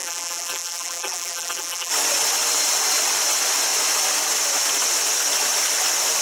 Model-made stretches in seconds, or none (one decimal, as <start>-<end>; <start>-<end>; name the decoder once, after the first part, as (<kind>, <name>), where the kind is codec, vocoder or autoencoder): 0.0-1.9 (vocoder, BigVGAN v2)